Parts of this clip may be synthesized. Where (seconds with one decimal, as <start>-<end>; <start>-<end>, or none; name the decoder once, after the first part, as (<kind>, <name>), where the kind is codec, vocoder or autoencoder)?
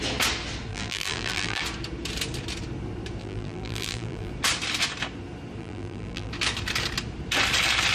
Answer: 0.7-1.6 (vocoder, BigVGAN v2); 3.2-4.3; 5.6-6.3